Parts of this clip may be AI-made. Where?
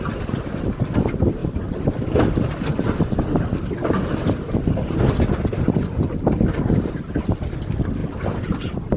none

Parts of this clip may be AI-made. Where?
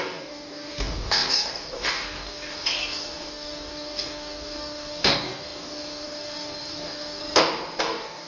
0.0-7.2 (codec, DAC); 7.8-8.3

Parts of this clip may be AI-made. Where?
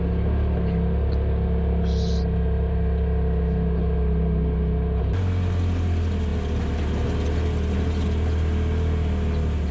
none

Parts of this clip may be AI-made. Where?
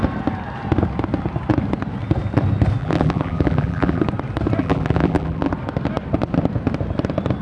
2.8-4.0 (vocoder, BigVGAN v2); 4.6-5.5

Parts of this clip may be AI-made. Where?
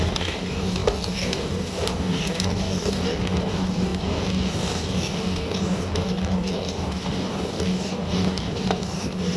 0.0-9.4 (codec, DAC)